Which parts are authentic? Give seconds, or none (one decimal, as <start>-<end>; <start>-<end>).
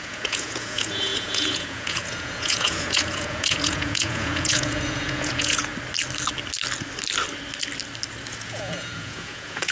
5.7-8.3